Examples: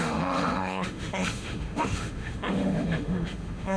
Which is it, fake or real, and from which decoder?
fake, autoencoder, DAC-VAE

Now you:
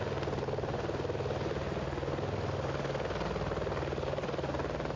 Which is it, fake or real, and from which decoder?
real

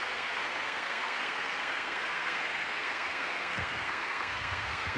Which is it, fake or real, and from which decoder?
fake, codec, SNAC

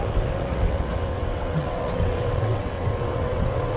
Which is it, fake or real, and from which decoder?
fake, vocoder, WaveNeXt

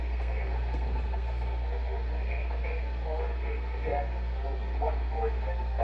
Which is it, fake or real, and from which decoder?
fake, codec, SNAC